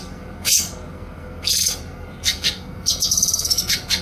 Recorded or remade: remade